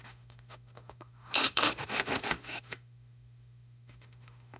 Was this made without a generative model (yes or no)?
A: no